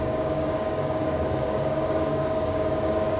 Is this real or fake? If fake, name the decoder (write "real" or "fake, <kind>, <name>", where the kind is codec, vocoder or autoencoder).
fake, codec, DAC